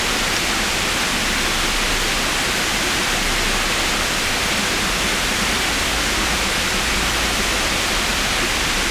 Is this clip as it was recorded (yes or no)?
yes